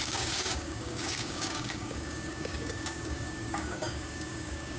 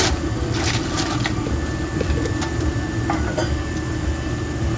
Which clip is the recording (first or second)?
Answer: second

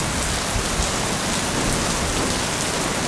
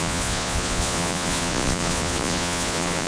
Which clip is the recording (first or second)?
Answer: first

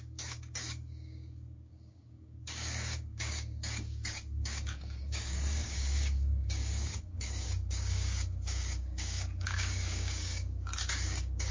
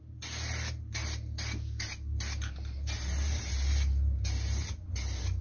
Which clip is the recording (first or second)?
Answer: second